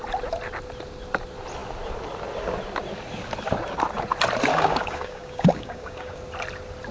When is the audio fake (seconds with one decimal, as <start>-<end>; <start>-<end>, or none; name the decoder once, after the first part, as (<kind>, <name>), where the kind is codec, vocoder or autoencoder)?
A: 4.5-6.2 (codec, DAC)

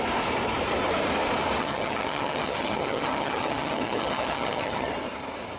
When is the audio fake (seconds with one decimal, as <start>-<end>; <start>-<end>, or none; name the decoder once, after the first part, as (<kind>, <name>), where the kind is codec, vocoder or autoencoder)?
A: 1.6-4.9 (vocoder, HiFi-GAN)